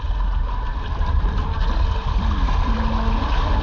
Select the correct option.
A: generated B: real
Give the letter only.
B